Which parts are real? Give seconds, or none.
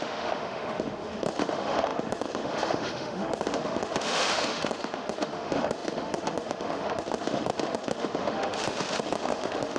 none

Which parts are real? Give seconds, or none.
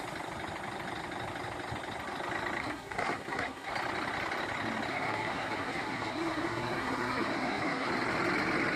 0.0-2.6; 3.7-4.9; 7.9-8.8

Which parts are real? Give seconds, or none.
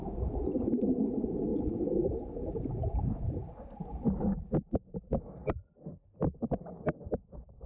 0.0-1.5; 4.1-7.7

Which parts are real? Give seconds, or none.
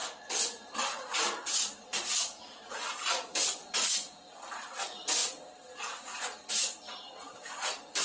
0.0-8.0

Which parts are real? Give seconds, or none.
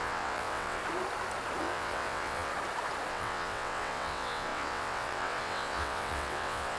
0.8-1.6; 2.5-3.1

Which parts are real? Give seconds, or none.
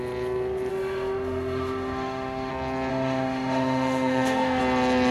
0.0-0.7; 2.5-2.9; 4.6-5.1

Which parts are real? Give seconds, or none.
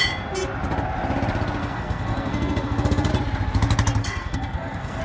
0.0-1.6; 3.1-4.0